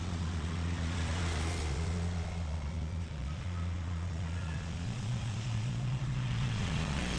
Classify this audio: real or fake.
fake